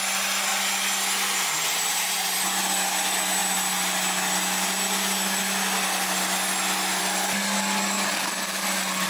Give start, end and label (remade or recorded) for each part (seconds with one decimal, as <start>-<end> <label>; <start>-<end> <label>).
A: 0.0-9.1 recorded